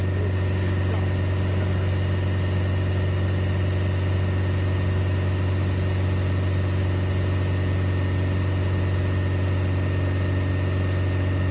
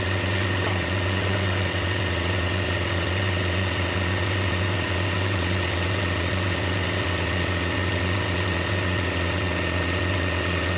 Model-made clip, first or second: second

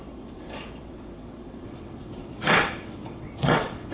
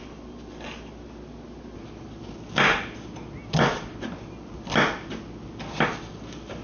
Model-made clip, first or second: first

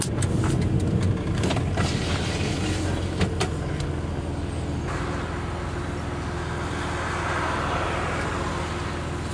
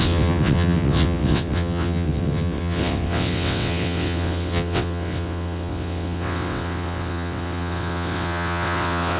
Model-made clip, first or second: second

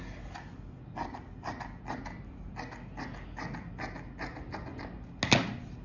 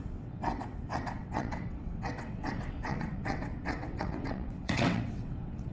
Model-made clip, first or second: second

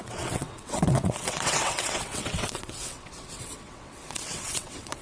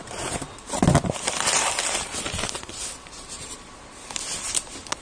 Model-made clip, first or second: first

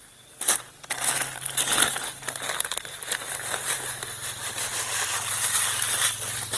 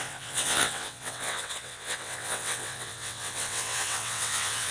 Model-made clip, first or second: second